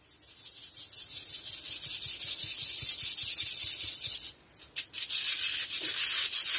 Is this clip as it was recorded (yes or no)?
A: yes